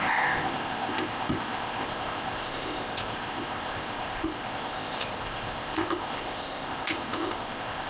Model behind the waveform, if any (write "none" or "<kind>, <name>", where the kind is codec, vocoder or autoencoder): codec, ZipCodec